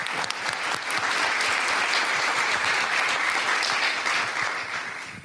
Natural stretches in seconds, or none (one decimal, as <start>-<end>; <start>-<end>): 0.0-2.1